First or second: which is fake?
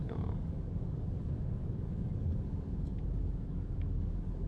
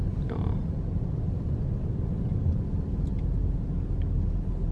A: first